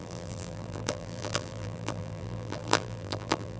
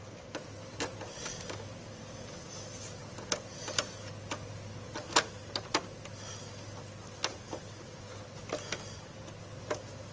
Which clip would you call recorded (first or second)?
second